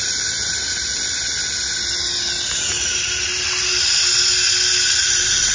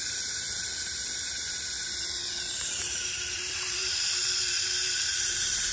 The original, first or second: first